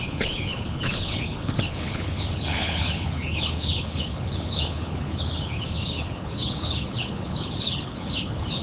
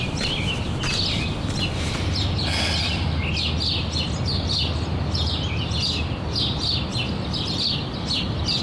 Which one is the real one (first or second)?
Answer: second